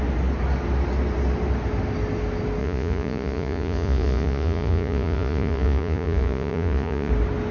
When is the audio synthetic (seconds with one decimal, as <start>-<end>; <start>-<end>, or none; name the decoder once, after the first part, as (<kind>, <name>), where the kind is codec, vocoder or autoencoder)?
2.6-7.1 (vocoder, Vocos)